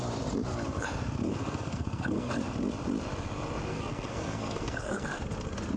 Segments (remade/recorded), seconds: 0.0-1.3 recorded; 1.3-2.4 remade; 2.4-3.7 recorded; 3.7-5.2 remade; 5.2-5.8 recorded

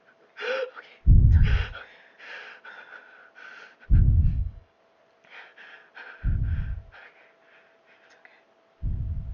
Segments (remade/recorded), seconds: 0.0-4.3 recorded; 4.3-4.8 remade; 4.8-9.3 recorded